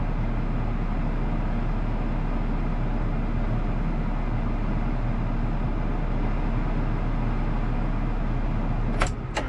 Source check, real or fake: real